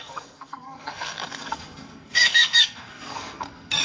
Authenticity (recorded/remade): remade